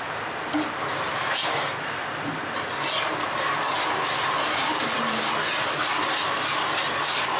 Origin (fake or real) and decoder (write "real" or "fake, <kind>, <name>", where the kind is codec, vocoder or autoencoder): real